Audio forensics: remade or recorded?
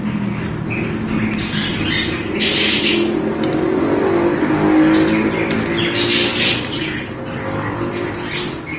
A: recorded